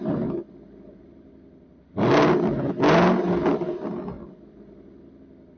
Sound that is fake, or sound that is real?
real